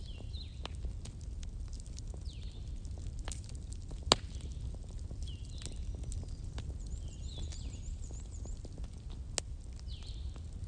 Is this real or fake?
real